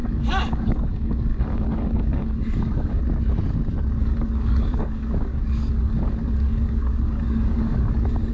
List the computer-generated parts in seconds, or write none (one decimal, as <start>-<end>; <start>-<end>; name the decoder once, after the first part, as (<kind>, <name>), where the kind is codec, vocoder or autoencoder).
0.0-3.0 (codec, DAC); 4.0-8.3